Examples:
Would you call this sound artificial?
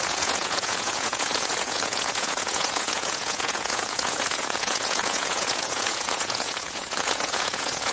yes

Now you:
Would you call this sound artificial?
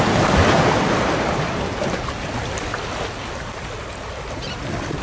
yes